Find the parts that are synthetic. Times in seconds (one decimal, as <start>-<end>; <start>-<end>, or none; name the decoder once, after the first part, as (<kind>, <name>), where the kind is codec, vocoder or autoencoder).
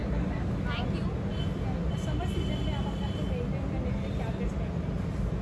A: 0.0-0.6 (codec, DAC)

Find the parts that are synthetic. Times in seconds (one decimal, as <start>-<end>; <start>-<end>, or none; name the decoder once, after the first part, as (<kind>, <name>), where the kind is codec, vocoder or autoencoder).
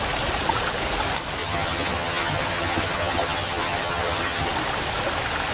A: 1.4-4.5 (vocoder, HiFi-GAN)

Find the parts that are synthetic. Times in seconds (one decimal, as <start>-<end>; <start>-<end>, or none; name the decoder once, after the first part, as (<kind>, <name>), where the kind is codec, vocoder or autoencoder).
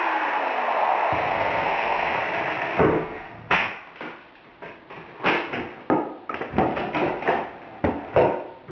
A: 1.3-2.2 (codec, SNAC); 2.9-3.7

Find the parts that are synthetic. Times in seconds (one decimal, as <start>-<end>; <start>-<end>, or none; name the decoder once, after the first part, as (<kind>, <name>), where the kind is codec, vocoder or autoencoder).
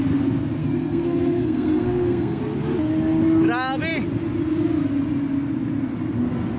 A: 0.6-2.4 (codec, SNAC)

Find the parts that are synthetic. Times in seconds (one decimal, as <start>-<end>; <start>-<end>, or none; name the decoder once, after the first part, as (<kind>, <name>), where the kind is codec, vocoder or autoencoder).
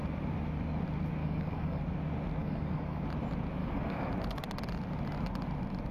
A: 1.2-1.8 (codec, DAC); 2.4-3.0; 3.6-4.1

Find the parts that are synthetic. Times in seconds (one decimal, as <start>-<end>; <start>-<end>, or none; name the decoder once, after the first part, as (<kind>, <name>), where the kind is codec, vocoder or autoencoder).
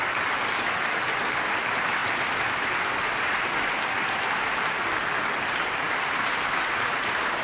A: none